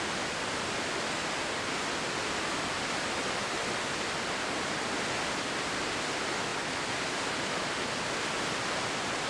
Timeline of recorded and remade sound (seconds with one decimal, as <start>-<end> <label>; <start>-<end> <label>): 0.0-9.3 recorded